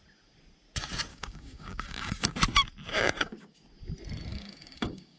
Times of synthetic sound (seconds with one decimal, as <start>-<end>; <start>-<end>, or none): 1.1-2.4; 2.9-3.5; 4.3-5.2